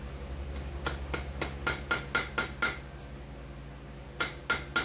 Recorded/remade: recorded